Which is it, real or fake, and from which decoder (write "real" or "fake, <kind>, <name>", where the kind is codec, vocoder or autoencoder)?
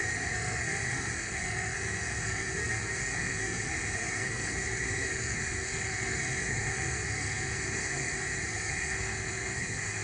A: fake, codec, SNAC